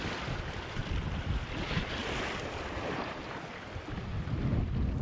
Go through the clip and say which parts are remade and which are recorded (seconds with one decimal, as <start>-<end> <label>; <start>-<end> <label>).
0.0-5.0 recorded